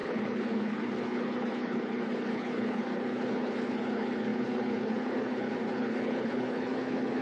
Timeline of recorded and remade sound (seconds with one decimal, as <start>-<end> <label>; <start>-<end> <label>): 0.0-7.2 remade